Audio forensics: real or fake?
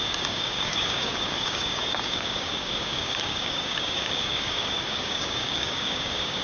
fake